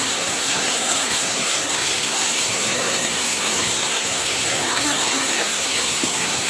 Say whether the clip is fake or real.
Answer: fake